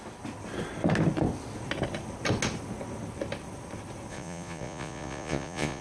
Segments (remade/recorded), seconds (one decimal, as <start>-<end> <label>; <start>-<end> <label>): 0.0-4.1 recorded; 4.1-5.8 remade